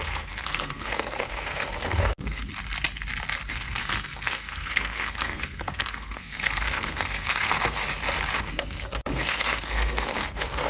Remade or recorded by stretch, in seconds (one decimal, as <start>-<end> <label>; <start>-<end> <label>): 0.0-2.5 remade; 2.5-3.5 recorded; 3.5-7.8 remade; 7.8-8.4 recorded; 8.4-10.7 remade